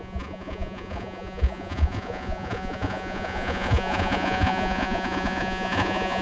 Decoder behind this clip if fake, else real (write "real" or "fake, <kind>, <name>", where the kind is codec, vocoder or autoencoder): fake, vocoder, Vocos